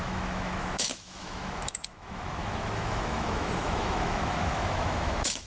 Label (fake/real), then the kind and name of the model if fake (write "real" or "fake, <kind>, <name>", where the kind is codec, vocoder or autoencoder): fake, autoencoder, DAC-VAE